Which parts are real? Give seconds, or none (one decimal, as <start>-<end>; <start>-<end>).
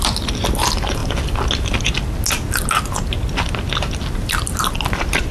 0.0-5.3